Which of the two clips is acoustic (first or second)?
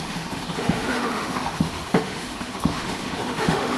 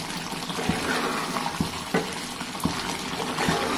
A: second